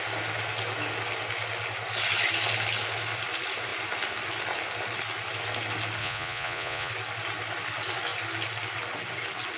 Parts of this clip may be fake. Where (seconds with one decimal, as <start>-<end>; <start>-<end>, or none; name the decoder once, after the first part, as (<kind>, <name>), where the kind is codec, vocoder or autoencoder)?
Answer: 6.0-6.9 (vocoder, Vocos)